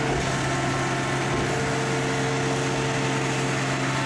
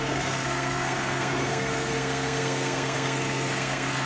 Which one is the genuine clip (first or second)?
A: first